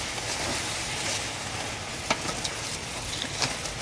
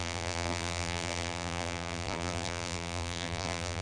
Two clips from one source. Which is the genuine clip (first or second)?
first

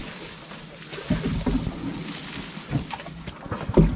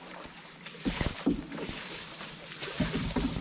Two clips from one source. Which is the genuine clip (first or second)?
first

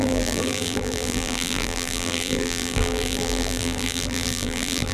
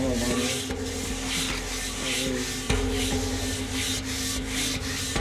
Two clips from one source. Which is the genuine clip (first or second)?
second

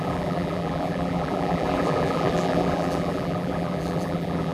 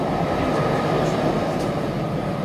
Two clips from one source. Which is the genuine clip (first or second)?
second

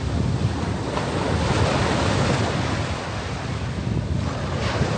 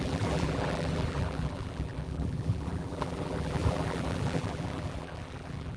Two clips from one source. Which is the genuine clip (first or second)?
first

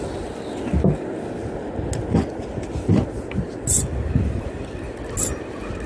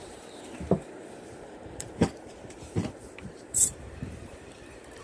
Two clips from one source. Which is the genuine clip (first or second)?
first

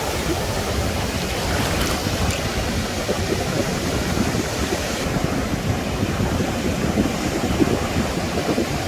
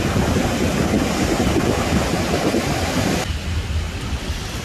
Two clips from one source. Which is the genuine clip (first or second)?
second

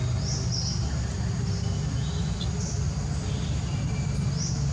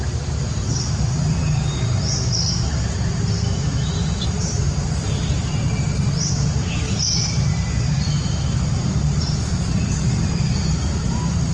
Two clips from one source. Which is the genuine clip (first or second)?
first